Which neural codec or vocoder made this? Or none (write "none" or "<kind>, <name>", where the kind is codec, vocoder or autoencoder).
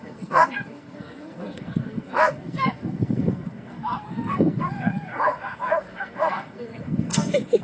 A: codec, SNAC